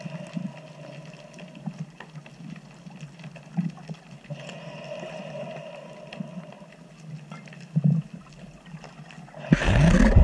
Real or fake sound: real